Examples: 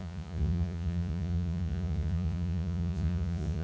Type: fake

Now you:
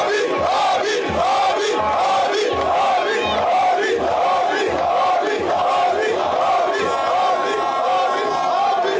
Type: real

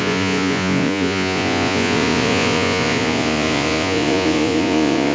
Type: fake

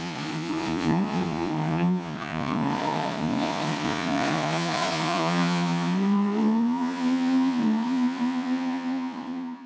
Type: fake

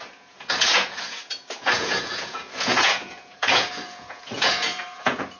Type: fake